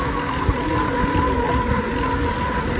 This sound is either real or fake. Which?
real